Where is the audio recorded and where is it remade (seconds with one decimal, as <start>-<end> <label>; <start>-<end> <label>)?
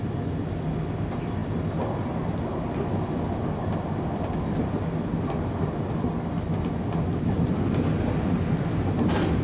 0.0-9.4 recorded